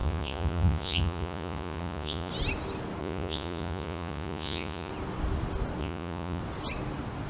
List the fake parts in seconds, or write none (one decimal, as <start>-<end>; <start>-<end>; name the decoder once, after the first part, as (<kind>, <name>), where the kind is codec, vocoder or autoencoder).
0.0-2.3 (vocoder, Vocos); 3.0-4.9; 5.8-6.4